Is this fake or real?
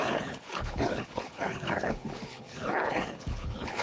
fake